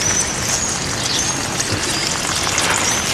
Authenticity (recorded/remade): recorded